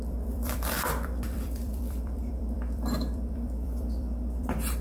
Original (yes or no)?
no